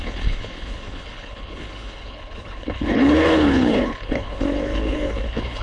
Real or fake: fake